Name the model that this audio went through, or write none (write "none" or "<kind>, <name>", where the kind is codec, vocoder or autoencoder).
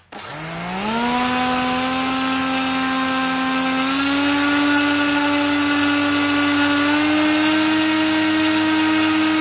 none